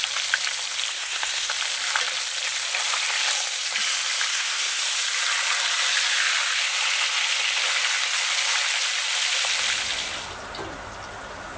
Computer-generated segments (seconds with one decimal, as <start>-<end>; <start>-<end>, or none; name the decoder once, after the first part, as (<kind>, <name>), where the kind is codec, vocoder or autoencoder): 0.9-1.5 (codec, SNAC); 4.3-4.8